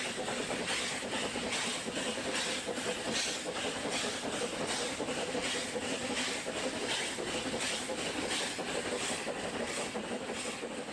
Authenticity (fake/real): real